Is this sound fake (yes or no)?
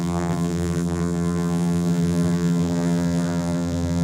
yes